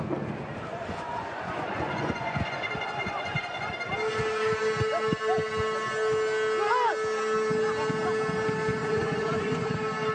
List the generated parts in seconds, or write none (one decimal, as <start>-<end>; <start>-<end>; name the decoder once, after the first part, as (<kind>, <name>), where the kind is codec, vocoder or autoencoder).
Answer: 0.7-3.7 (vocoder, Vocos); 8.8-9.7

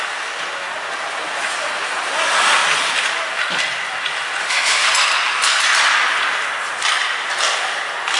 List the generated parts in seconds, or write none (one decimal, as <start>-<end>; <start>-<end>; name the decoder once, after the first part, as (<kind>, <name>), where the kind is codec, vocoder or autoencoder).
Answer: 4.4-4.9 (autoencoder, DAC-VAE)

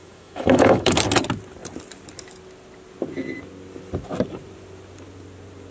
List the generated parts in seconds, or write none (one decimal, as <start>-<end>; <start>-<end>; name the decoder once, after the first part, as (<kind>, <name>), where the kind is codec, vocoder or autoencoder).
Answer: 0.0-1.0 (autoencoder, DAC-VAE)

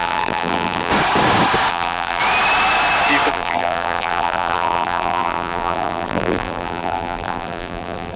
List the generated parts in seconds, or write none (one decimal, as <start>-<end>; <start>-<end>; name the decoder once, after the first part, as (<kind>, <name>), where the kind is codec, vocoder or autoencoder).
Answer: 0.0-0.9 (vocoder, BigVGAN v2); 1.7-2.2; 3.3-8.2

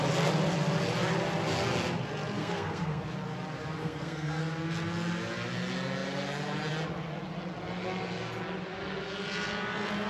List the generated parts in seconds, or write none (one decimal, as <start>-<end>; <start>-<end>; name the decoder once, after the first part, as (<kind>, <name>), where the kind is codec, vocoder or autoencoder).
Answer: 2.4-3.0 (codec, SNAC); 3.8-4.4

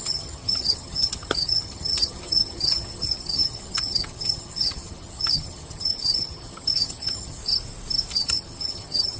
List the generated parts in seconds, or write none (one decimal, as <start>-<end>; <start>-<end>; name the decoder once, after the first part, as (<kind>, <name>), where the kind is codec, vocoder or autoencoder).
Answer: 0.0-7.4 (vocoder, HiFi-GAN); 8.1-9.2

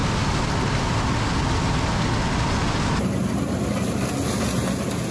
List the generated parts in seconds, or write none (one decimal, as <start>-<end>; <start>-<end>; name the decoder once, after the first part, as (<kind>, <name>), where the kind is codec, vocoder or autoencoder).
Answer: none